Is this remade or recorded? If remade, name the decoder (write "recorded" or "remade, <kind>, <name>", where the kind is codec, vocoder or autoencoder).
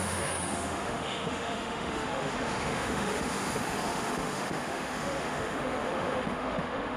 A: remade, autoencoder, DAC-VAE